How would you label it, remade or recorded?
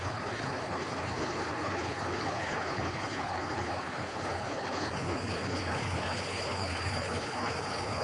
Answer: remade